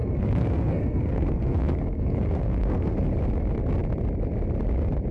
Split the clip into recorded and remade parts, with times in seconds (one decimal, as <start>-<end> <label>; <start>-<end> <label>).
0.0-3.1 remade; 3.1-5.1 recorded